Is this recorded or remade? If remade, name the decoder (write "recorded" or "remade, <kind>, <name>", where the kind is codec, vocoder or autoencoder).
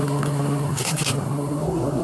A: remade, codec, SNAC